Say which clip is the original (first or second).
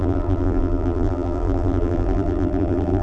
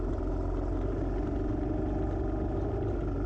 second